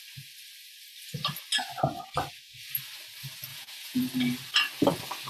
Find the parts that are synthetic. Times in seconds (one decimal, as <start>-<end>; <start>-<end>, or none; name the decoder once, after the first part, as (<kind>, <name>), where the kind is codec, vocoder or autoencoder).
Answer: 3.5-4.0 (vocoder, Vocos)